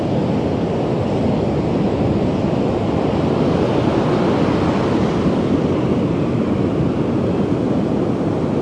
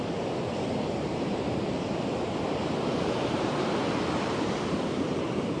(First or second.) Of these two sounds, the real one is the first